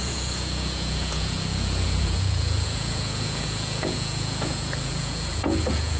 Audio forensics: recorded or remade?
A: remade